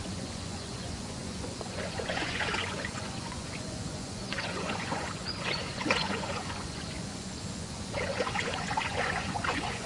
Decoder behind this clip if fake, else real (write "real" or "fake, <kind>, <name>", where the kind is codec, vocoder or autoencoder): fake, vocoder, Vocos